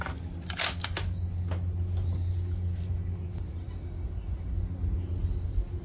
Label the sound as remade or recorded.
recorded